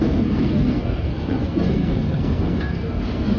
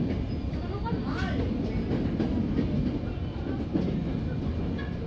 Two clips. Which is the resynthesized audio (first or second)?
first